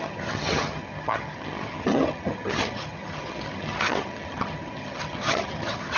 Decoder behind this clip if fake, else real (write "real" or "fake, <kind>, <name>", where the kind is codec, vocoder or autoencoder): fake, vocoder, HiFi-GAN